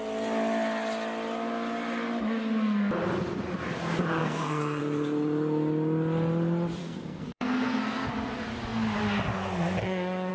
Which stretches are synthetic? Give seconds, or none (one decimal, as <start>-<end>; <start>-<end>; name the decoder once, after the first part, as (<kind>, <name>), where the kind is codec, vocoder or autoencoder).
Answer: 4.2-4.8 (codec, SNAC); 6.8-8.1

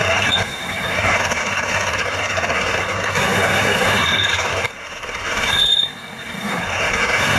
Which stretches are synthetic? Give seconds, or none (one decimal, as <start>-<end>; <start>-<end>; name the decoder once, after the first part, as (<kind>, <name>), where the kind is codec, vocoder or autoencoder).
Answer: 0.0-7.4 (codec, SNAC)

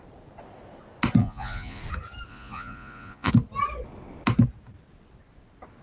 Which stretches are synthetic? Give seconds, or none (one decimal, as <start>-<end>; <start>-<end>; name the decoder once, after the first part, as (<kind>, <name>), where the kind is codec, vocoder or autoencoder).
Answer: 1.2-1.8 (vocoder, Vocos); 2.3-3.3